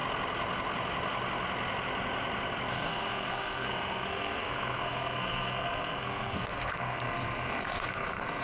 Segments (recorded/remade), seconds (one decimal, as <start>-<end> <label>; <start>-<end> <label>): 0.0-2.7 recorded; 2.7-8.4 remade